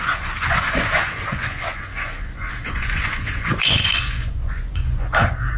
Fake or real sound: fake